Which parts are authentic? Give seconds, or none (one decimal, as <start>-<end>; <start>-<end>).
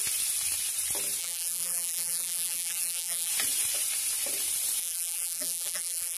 0.0-1.2; 3.3-4.8